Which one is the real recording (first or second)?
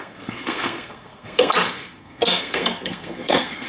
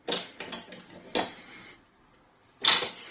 second